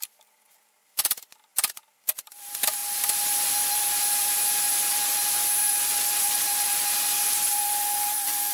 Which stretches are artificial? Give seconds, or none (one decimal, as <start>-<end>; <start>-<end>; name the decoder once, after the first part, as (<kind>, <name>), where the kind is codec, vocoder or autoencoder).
0.0-2.8 (vocoder, BigVGAN v2); 5.6-8.5